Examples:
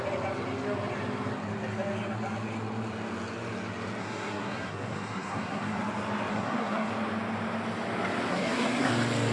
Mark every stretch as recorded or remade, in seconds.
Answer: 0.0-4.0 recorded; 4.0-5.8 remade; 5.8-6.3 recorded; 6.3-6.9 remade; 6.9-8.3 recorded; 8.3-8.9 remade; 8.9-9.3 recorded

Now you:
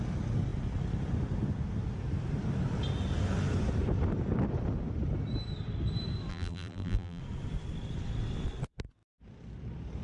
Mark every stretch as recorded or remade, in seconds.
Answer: 0.0-6.3 recorded; 6.3-7.2 remade; 7.2-10.0 recorded

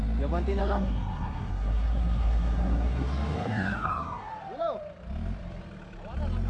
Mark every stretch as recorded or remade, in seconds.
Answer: 0.0-0.6 recorded; 0.6-4.3 remade; 4.3-6.5 recorded

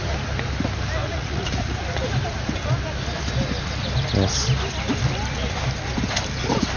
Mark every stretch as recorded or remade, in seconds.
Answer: 0.0-1.0 recorded; 1.0-1.8 remade; 1.8-6.8 recorded

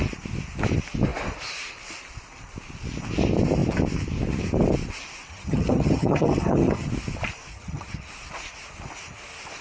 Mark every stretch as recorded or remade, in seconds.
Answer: 0.0-5.3 recorded; 5.3-6.9 remade; 6.9-7.5 recorded; 7.5-8.1 remade; 8.1-9.6 recorded

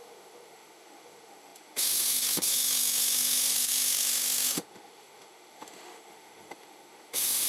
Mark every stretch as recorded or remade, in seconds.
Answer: 0.0-7.5 remade

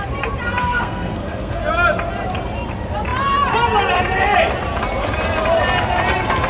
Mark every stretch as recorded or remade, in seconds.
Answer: 0.0-0.6 recorded; 0.6-1.6 remade; 1.6-6.5 recorded